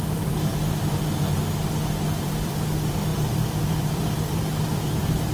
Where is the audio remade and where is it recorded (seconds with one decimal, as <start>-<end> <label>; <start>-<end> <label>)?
0.0-0.5 remade; 0.5-2.2 recorded; 2.2-5.3 remade